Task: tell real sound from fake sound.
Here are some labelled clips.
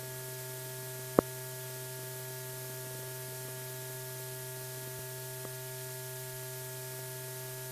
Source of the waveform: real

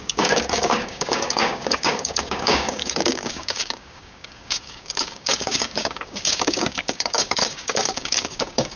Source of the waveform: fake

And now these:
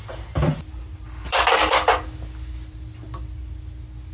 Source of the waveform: real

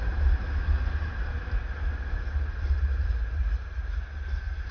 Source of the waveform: real